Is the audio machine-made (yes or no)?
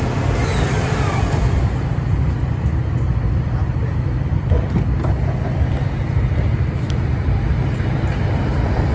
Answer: no